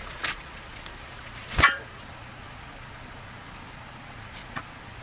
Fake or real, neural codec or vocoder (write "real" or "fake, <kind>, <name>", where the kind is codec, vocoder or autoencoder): fake, vocoder, Vocos